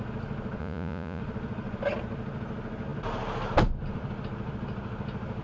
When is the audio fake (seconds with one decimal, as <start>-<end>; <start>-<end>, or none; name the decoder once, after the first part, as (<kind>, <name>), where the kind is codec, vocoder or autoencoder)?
0.6-1.2 (vocoder, Vocos)